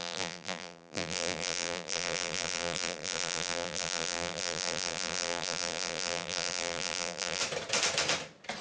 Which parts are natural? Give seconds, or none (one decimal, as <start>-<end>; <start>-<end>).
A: 7.4-8.6